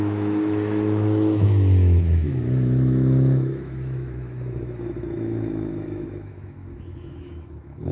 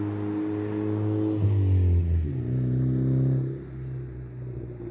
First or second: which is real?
second